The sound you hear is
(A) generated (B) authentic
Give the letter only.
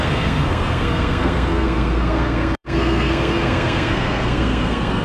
A